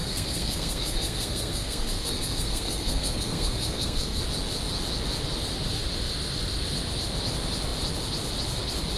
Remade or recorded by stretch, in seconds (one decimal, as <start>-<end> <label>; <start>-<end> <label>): 0.0-4.2 remade; 4.2-9.0 recorded